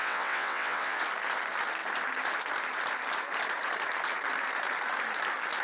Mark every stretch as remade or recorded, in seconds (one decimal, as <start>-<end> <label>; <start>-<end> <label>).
0.0-1.0 remade; 1.0-5.6 recorded